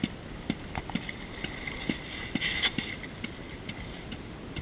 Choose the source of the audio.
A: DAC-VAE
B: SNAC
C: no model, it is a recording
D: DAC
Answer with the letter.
C